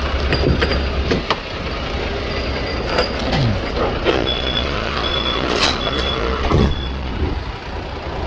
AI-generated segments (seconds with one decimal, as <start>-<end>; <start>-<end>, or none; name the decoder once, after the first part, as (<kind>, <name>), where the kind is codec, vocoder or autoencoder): 4.1-7.1 (vocoder, Vocos)